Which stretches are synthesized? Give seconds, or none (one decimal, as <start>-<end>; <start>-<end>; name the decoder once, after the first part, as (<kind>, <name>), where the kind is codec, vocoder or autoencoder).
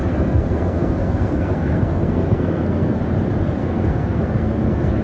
0.0-3.0 (codec, SNAC); 3.6-5.0